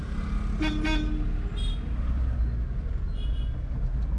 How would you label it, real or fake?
real